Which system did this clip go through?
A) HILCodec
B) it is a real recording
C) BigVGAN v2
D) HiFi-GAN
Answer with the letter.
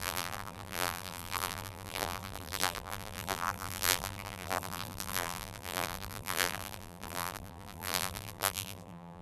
C